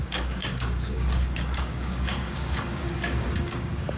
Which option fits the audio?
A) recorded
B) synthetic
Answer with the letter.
B